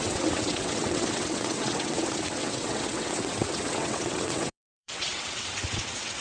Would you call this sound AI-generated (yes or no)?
yes